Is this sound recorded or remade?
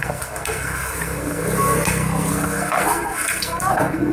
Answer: remade